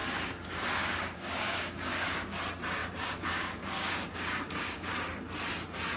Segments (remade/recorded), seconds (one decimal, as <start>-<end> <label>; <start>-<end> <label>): 0.0-2.4 remade; 2.4-2.8 recorded; 2.8-4.9 remade; 4.9-6.0 recorded